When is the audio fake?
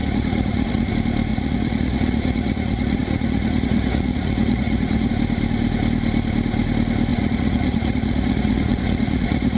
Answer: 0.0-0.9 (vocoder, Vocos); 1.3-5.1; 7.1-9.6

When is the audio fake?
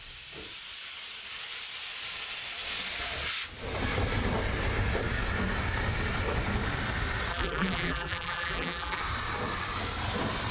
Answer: 7.3-9.0 (vocoder, BigVGAN v2)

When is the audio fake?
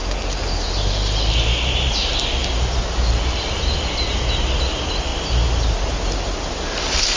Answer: none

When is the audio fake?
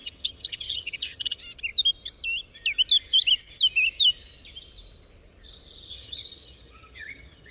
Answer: 0.0-1.4 (vocoder, HiFi-GAN); 5.9-7.5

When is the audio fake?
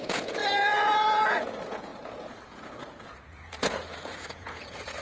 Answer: 0.0-5.0 (vocoder, Vocos)